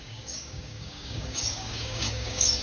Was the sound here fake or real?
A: fake